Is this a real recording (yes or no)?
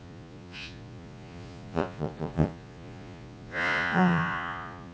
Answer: no